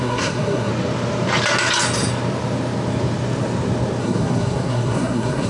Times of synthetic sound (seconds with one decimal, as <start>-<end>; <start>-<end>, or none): 0.0-0.7; 4.0-5.5